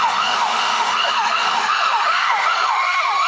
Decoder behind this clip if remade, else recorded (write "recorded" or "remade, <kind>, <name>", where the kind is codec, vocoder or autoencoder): remade, autoencoder, DAC-VAE